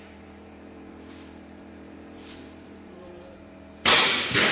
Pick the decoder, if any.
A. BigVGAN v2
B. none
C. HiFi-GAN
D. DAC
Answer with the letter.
A